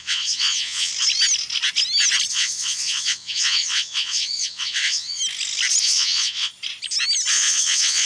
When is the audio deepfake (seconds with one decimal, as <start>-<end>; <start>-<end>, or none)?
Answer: 0.0-0.9; 2.3-5.2; 5.8-6.5; 7.3-8.1